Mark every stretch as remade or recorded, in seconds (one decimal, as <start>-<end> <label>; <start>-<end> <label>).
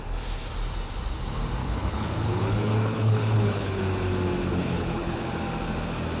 0.0-1.6 recorded; 1.6-3.8 remade; 3.8-4.5 recorded; 4.5-5.2 remade; 5.2-6.2 recorded